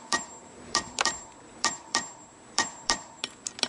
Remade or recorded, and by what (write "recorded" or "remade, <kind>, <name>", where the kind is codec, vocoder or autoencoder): remade, vocoder, BigVGAN v2